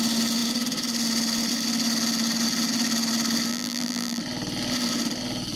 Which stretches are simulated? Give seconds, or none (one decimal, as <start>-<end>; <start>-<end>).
3.5-4.2